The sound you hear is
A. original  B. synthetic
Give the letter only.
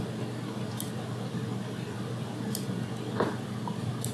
A